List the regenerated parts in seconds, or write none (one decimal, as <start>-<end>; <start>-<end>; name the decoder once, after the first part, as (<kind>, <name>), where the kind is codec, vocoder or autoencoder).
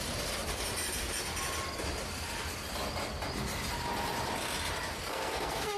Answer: 5.1-5.8 (codec, SNAC)